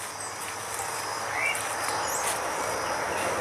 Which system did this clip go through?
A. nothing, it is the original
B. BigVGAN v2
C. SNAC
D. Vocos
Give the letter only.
A